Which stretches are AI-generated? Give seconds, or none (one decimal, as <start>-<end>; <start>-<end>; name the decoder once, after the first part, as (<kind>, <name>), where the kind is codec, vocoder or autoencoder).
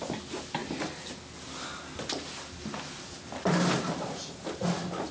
none